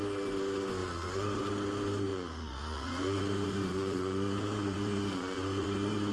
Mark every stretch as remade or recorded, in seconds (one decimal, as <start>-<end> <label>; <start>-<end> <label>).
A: 0.0-0.8 recorded; 0.8-1.5 remade; 1.5-2.1 recorded; 2.1-6.1 remade